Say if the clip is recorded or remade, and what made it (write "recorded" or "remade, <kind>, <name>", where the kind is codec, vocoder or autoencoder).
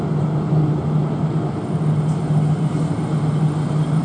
recorded